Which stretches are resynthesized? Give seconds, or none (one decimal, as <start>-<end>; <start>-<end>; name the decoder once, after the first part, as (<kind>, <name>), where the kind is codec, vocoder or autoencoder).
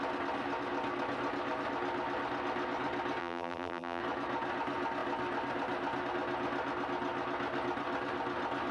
3.2-4.0 (vocoder, BigVGAN v2)